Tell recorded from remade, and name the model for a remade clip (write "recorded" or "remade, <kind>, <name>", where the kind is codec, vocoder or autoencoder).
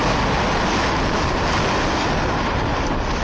recorded